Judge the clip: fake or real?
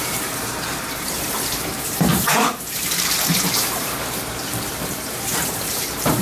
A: fake